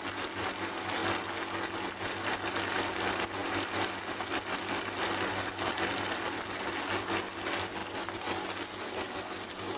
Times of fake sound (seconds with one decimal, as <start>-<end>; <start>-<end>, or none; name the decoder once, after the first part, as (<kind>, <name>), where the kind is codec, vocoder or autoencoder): none